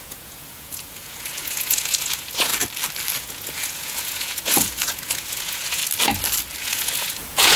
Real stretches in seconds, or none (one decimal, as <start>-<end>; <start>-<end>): 2.5-3.2; 5.8-6.6